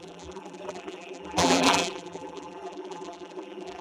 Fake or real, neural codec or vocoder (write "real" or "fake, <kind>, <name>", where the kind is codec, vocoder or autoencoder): fake, vocoder, BigVGAN v2